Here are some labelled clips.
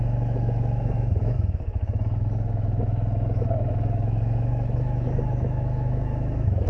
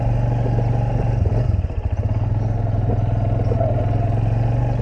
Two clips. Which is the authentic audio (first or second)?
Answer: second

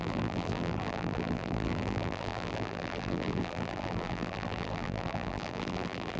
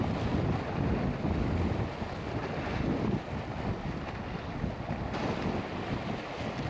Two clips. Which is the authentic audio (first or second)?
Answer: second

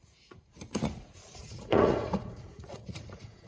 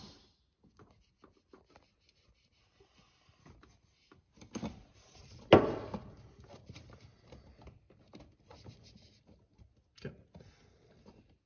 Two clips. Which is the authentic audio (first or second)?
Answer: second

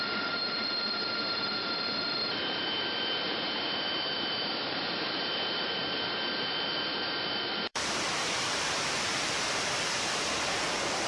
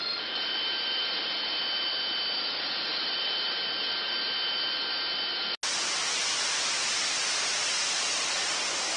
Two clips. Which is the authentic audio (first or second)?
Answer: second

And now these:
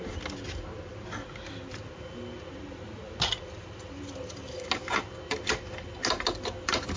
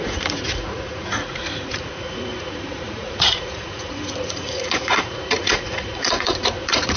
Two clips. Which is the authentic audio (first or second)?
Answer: first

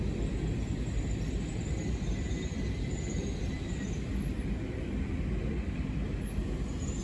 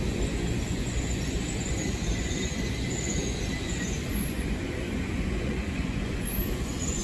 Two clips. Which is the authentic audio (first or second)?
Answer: first